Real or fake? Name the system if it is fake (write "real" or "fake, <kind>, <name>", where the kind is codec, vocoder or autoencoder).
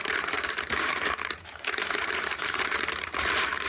fake, vocoder, BigVGAN v2